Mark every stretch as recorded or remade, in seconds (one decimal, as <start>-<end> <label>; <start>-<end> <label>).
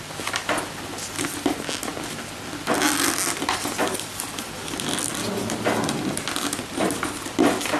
0.0-7.8 recorded